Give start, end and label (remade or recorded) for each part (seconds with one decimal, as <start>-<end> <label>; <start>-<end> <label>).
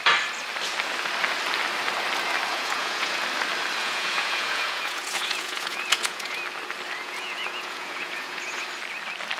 0.0-2.5 recorded; 2.5-3.2 remade; 3.2-3.8 recorded; 3.8-6.4 remade; 6.4-7.0 recorded; 7.0-8.6 remade; 8.6-9.4 recorded